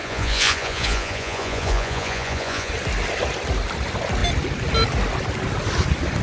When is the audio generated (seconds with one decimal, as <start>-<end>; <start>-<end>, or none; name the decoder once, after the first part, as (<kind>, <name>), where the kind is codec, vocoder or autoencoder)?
0.0-2.7 (vocoder, Vocos)